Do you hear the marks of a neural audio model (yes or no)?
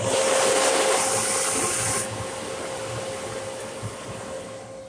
no